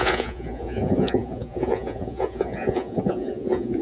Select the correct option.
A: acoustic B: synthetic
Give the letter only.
B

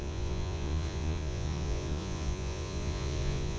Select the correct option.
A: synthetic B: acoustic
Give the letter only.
A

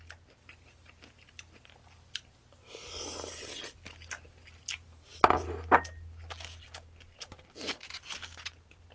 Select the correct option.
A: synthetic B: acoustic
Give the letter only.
B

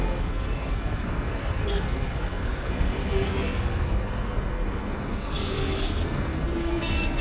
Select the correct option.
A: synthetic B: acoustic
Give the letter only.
A